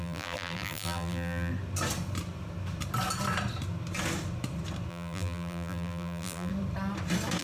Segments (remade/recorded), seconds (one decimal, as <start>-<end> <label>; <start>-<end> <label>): 0.0-1.5 remade; 1.5-4.9 recorded; 4.9-6.5 remade; 6.5-7.4 recorded